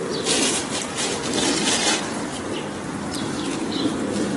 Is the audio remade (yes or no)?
no